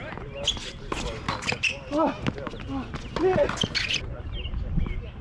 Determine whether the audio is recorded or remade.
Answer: recorded